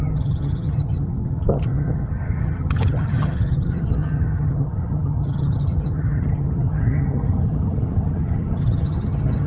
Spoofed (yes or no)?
yes